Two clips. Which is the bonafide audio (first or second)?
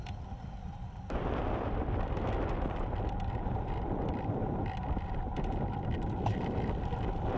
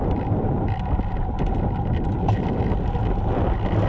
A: second